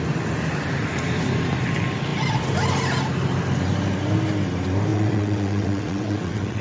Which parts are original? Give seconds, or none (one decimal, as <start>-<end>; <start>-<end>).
0.0-4.9